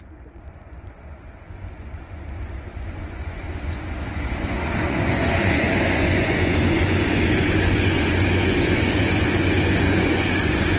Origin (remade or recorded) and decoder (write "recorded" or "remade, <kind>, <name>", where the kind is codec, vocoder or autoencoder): remade, vocoder, Vocos